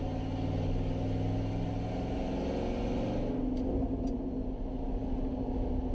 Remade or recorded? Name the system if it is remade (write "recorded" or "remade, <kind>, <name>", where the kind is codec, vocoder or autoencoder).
recorded